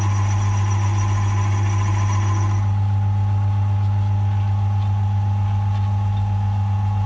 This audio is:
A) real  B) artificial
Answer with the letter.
A